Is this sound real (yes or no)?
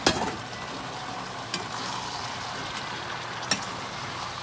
yes